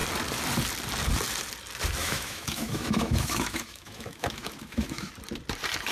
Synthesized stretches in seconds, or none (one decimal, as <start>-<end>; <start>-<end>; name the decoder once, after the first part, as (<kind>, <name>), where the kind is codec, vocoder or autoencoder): 2.0-5.1 (autoencoder, DAC-VAE)